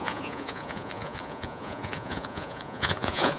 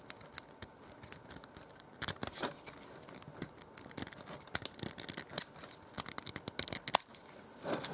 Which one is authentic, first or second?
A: second